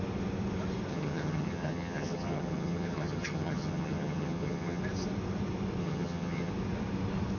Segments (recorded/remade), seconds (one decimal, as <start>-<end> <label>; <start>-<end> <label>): 0.0-0.9 recorded; 0.9-4.8 remade; 4.8-5.8 recorded; 5.8-6.5 remade; 6.5-7.4 recorded